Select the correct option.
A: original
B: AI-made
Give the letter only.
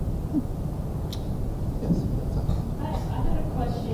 A